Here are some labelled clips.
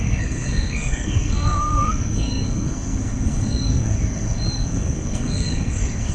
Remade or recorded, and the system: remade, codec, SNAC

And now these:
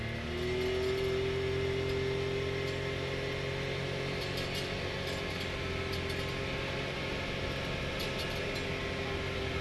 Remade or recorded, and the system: recorded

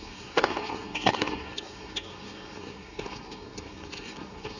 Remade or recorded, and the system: remade, codec, SNAC